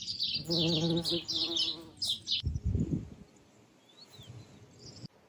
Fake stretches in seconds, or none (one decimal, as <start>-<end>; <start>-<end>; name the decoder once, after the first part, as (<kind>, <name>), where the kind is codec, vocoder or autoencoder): none